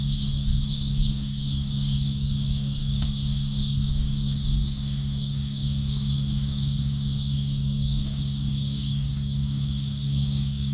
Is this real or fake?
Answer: fake